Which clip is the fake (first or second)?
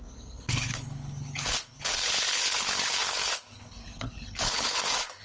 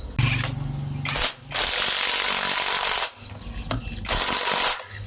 first